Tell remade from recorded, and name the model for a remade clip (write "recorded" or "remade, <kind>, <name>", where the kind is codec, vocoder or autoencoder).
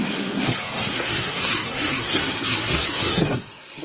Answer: remade, codec, SNAC